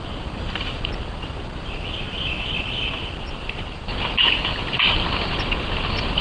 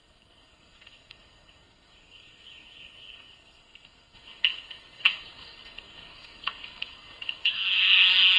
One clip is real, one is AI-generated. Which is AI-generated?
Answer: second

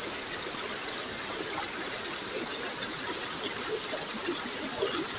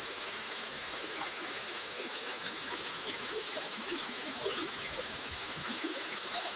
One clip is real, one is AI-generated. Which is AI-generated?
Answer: second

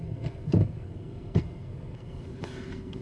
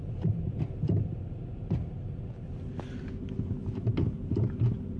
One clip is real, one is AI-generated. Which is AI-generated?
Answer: first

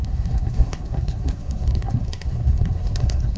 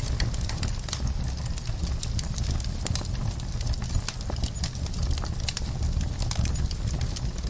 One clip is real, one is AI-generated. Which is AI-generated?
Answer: first